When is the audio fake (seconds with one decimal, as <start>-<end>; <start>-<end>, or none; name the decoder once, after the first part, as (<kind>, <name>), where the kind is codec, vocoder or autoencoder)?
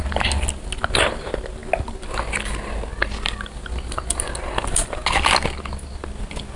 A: none